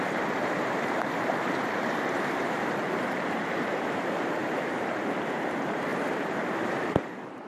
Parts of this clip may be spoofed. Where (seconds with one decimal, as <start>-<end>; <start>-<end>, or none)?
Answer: 0.0-7.5